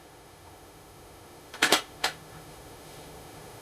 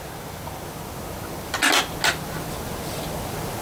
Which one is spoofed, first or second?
first